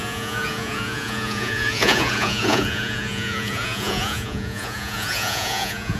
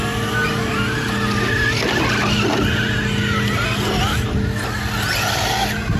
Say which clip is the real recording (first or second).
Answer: second